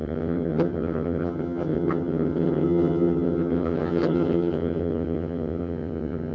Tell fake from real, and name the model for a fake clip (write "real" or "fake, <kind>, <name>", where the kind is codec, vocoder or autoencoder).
fake, vocoder, HiFi-GAN